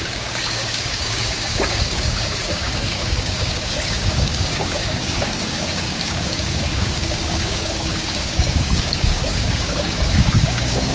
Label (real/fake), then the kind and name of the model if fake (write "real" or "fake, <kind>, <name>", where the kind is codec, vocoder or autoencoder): fake, codec, DAC